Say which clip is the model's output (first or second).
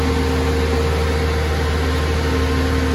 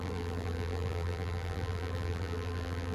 second